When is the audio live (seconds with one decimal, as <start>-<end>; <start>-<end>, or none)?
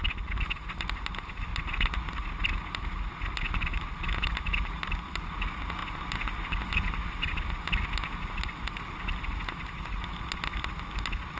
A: 0.0-11.4